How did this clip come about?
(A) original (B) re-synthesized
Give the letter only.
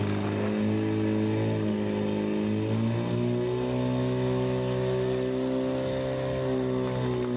A